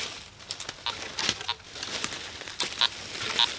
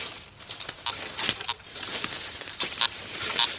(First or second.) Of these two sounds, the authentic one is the first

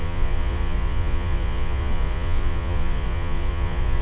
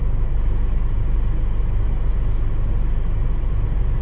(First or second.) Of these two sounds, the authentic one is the second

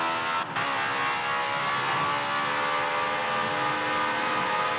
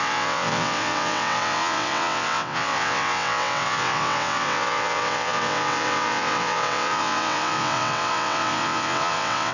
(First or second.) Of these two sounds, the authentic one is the first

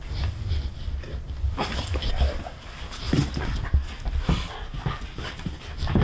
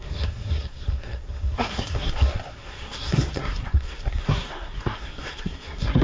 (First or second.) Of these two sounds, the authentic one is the first